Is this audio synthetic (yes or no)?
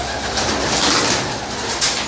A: no